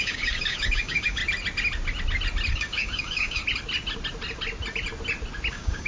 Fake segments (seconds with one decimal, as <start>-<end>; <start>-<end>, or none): 0.0-1.2; 2.5-3.4; 5.5-5.9